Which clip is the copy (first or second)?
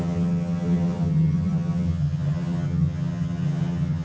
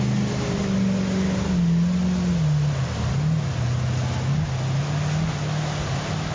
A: first